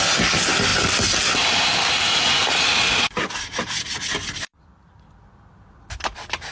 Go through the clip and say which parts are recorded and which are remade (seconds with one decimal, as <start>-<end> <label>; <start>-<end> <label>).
0.0-6.5 recorded